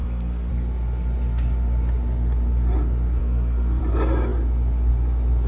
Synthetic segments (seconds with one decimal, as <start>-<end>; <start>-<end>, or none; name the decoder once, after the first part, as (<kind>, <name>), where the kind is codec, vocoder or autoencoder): 0.0-0.5 (codec, SNAC); 3.2-3.8